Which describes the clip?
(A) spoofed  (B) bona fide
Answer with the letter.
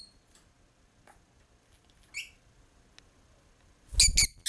B